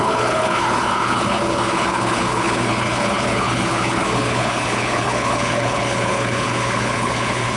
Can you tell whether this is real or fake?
fake